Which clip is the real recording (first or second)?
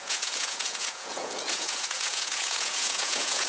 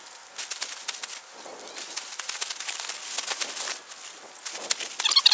second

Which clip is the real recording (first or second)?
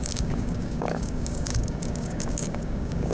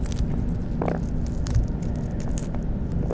second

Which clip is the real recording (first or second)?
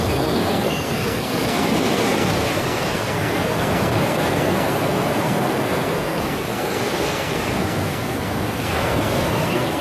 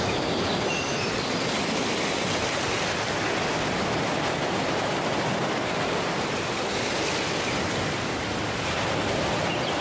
second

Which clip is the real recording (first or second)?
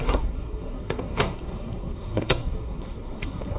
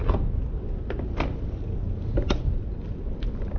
second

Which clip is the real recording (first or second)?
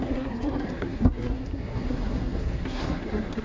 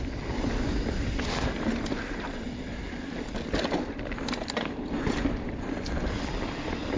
second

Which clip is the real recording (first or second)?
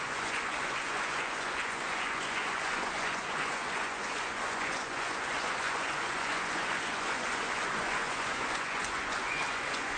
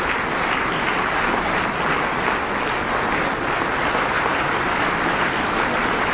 second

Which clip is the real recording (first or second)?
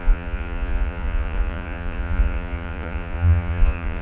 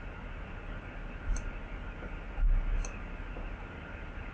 second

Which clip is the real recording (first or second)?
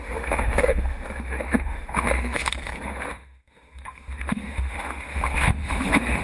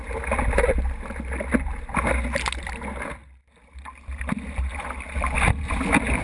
second